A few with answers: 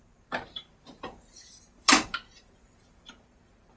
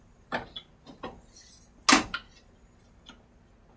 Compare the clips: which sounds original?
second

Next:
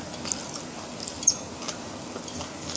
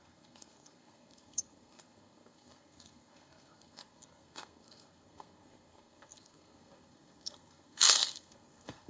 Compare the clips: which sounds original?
first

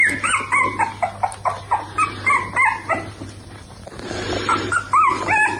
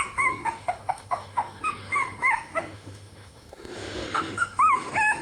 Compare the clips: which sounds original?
first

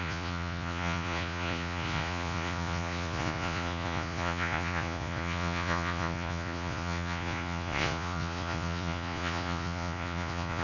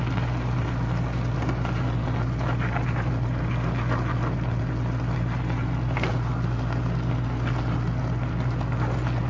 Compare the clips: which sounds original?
second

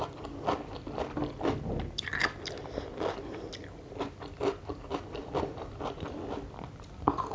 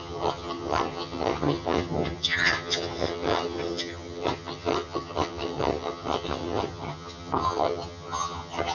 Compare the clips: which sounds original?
first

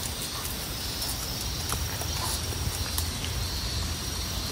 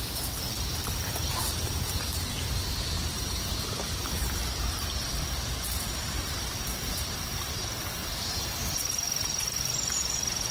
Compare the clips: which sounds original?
first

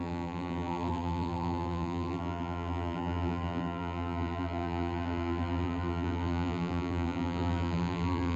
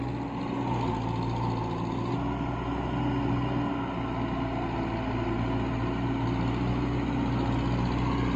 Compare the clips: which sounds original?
second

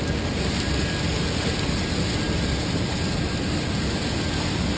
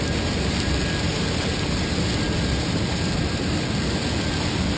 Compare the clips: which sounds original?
first